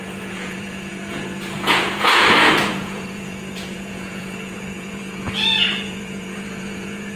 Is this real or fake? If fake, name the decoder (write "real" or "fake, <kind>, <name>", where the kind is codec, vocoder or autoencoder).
fake, vocoder, Vocos